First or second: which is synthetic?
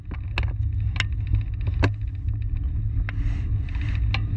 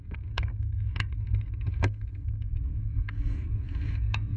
second